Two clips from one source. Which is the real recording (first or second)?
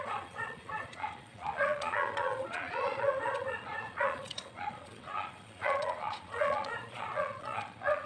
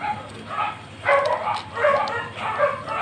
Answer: second